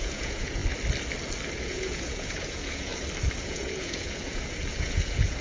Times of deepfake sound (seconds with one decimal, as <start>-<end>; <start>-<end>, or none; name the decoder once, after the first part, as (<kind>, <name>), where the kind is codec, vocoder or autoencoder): 0.0-0.6 (vocoder, Vocos); 1.6-2.9; 3.4-5.4